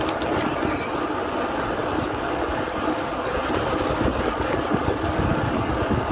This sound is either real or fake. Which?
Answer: real